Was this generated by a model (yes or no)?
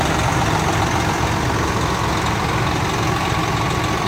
no